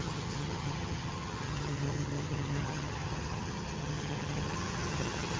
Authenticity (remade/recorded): remade